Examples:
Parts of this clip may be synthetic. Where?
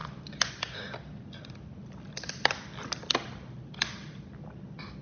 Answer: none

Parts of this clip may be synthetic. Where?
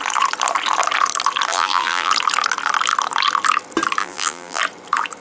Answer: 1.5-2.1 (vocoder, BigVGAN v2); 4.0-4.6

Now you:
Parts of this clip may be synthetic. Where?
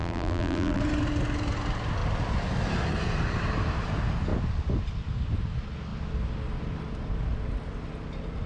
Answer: 0.0-0.8 (vocoder, BigVGAN v2)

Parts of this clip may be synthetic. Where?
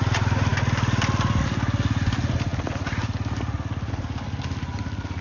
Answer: none